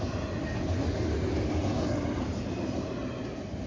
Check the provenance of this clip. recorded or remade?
recorded